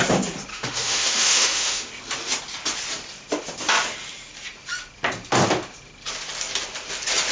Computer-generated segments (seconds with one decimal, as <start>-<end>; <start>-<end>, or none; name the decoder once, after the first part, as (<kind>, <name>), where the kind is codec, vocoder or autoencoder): 0.5-1.9 (autoencoder, DAC-VAE)